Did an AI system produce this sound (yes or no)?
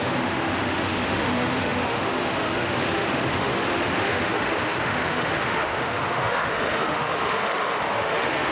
yes